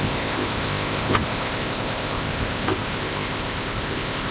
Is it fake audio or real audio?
fake